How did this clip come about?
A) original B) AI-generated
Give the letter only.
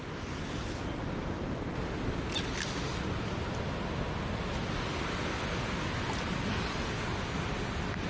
A